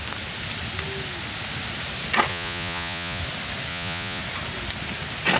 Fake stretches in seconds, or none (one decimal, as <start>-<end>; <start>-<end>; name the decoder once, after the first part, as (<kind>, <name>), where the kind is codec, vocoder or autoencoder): 2.3-3.2 (vocoder, Vocos); 3.7-4.2